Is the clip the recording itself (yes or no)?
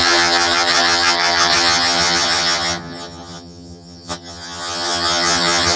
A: no